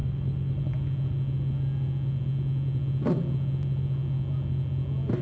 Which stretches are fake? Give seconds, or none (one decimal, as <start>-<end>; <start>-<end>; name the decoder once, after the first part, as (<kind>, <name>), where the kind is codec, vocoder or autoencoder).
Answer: 0.0-0.6 (autoencoder, DAC-VAE)